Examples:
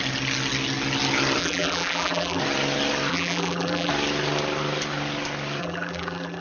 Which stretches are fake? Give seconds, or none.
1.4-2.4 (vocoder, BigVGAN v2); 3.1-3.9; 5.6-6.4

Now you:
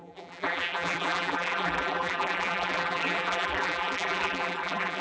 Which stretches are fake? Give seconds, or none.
0.0-5.0 (vocoder, BigVGAN v2)

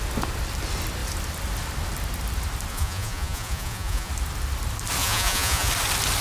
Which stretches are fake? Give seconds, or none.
2.7-4.1 (vocoder, Vocos); 5.0-5.7

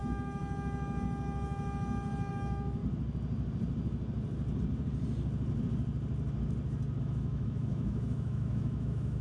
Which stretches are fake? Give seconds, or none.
0.0-0.4 (autoencoder, DAC-VAE); 2.3-2.8; 7.0-9.2